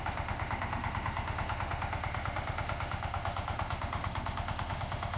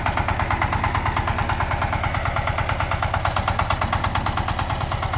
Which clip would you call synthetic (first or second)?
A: first